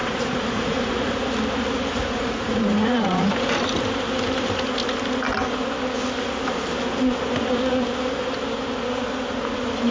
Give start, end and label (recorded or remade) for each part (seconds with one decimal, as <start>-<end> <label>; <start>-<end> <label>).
0.0-1.3 remade; 1.3-1.9 recorded; 1.9-3.3 remade; 3.3-9.9 recorded